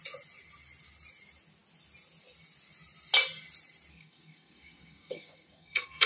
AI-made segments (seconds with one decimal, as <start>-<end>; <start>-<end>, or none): 3.9-6.1